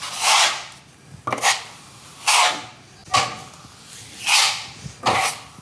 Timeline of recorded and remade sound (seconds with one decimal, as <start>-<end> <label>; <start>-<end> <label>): 0.0-5.6 recorded